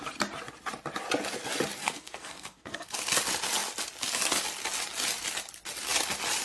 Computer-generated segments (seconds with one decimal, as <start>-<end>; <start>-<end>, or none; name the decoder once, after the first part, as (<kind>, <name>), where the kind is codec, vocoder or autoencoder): 1.8-2.9 (codec, SNAC)